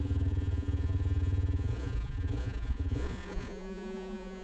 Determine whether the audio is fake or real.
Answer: fake